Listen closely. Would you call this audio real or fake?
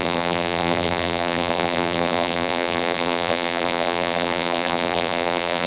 fake